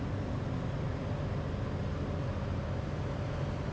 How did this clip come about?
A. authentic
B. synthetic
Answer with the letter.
A